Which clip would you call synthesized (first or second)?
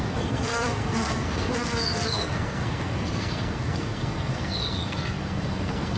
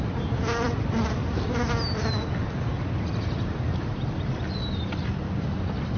first